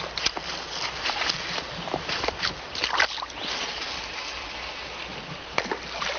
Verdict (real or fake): real